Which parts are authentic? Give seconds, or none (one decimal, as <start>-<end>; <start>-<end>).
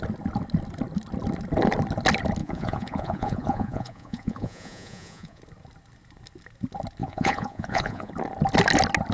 0.0-2.4; 5.4-7.0; 8.1-9.1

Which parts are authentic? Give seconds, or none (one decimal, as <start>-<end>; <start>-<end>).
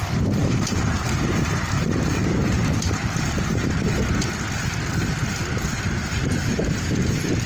3.8-6.0; 6.9-7.5